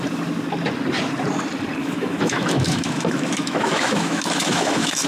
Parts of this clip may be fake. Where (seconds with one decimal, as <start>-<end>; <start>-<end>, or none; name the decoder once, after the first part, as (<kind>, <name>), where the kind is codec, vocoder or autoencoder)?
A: 1.8-5.1 (autoencoder, DAC-VAE)